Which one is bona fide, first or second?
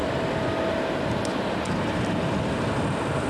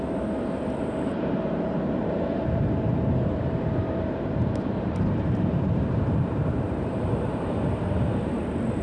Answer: first